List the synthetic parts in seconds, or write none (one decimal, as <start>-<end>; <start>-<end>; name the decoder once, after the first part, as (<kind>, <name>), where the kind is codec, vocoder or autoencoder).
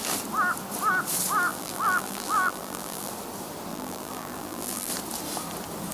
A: 1.5-3.1 (vocoder, BigVGAN v2); 3.7-4.9